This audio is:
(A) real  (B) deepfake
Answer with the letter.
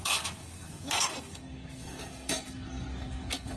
B